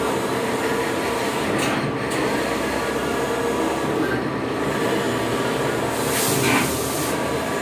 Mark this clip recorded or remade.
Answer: recorded